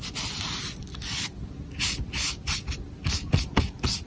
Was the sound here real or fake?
real